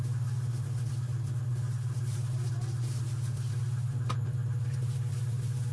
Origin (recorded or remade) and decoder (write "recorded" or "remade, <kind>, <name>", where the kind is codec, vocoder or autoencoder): recorded